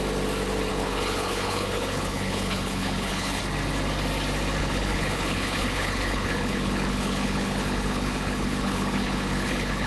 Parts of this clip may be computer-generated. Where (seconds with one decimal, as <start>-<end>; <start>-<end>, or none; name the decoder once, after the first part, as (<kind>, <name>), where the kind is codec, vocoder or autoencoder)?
0.7-3.4 (codec, HILCodec); 4.6-9.9

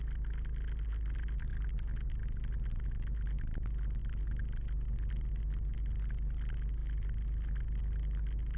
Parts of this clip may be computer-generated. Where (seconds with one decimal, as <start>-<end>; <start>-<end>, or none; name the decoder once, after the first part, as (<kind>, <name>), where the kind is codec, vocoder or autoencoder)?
none